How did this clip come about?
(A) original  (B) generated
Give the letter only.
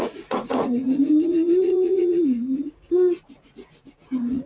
B